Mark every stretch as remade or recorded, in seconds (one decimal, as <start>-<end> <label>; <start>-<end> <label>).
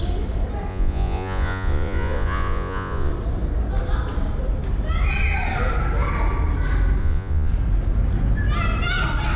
0.0-0.7 recorded; 0.7-3.1 remade; 3.1-7.0 recorded; 7.0-7.5 remade; 7.5-9.4 recorded